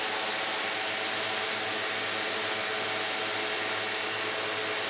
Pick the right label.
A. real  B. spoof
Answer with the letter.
A